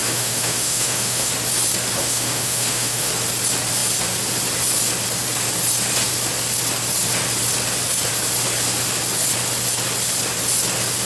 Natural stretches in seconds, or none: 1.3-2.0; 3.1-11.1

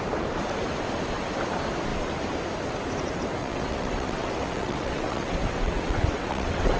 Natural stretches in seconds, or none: 0.0-3.4

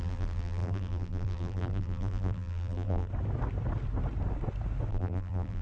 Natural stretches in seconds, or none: 3.1-4.9